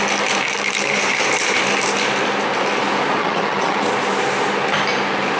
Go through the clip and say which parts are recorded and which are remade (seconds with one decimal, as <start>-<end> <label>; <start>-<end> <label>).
0.0-3.2 recorded; 3.2-3.9 remade; 3.9-5.4 recorded